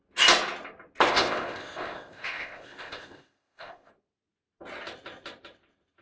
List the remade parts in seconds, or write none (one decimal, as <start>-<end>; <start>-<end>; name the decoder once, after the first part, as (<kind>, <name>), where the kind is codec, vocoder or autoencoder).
1.1-3.9 (codec, ZipCodec)